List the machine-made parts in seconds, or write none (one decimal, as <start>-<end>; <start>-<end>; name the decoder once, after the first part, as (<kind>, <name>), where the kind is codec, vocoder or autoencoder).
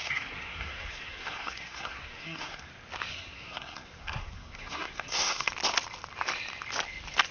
0.0-2.7 (codec, SNAC); 3.1-5.5